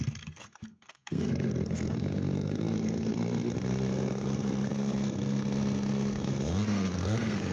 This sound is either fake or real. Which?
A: fake